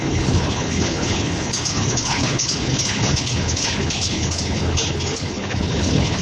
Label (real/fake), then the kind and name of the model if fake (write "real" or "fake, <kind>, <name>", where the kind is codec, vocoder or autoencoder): fake, codec, HILCodec